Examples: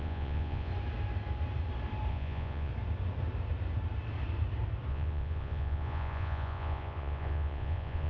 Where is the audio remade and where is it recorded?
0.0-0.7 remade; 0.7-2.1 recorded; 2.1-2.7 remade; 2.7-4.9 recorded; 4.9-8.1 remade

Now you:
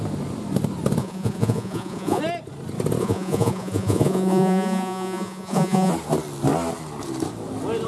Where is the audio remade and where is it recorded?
0.0-1.0 recorded; 1.0-2.2 remade; 2.2-3.0 recorded; 3.0-5.9 remade; 5.9-7.9 recorded

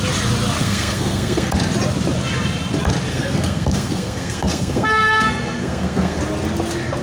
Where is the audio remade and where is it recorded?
0.0-0.6 recorded; 0.6-1.5 remade; 1.5-3.1 recorded; 3.1-6.2 remade; 6.2-7.0 recorded